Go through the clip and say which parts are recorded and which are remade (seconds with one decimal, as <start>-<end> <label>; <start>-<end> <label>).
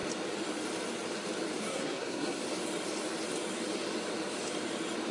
0.0-1.6 recorded; 1.6-2.4 remade; 2.4-5.1 recorded